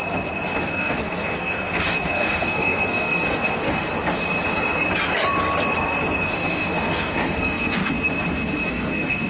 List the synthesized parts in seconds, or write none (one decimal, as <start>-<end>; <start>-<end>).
0.6-3.9; 6.2-7.8; 8.7-9.3